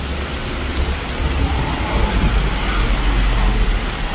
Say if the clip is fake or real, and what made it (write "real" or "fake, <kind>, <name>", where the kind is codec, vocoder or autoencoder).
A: real